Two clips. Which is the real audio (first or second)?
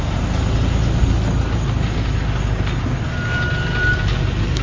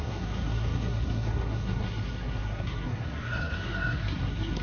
first